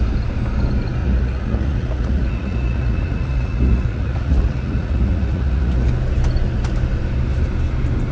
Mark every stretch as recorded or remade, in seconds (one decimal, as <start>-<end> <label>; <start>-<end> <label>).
0.0-1.0 recorded; 1.0-5.9 remade; 5.9-8.1 recorded